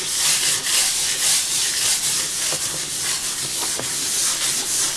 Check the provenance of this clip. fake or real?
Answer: real